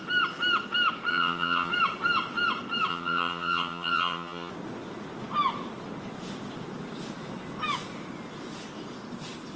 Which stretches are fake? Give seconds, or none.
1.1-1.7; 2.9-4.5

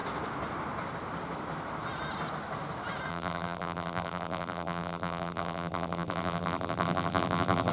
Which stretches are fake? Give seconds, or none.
3.1-7.7